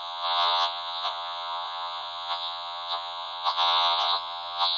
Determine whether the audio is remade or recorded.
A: remade